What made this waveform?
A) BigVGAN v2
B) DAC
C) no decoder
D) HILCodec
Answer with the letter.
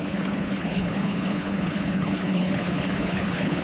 D